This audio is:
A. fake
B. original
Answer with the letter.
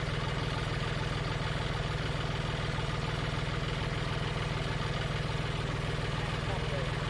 B